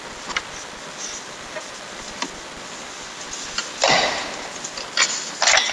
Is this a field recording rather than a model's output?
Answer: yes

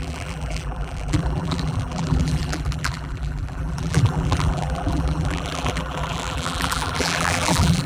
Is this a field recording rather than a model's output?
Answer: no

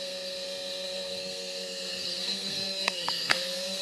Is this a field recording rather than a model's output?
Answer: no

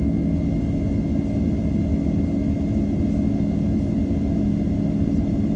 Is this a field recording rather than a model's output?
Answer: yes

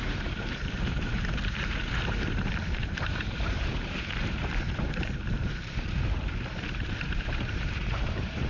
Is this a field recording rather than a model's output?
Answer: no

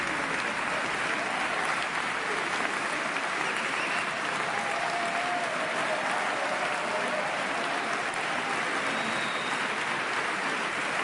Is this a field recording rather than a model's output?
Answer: yes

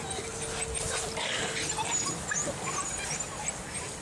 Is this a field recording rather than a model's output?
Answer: yes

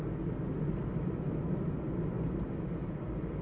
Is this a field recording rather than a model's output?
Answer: yes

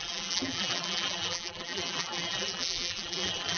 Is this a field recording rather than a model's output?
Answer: no